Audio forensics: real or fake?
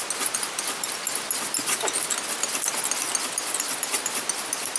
real